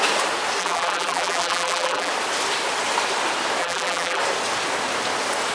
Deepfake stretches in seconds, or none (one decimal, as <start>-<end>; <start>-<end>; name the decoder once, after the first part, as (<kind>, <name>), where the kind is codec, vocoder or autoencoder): 0.6-2.1 (vocoder, BigVGAN v2); 3.6-4.2